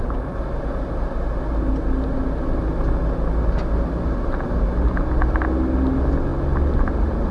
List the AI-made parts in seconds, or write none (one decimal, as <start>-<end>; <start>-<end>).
6.3-7.3